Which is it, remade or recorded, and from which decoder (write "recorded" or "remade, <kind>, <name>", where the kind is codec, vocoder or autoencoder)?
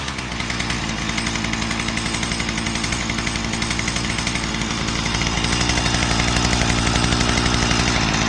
recorded